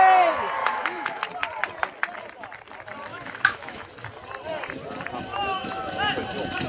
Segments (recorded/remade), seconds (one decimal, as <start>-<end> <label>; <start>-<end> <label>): 0.0-0.6 recorded; 0.6-1.2 remade; 1.2-3.1 recorded; 3.1-3.9 remade; 3.9-5.3 recorded; 5.3-5.9 remade; 5.9-6.7 recorded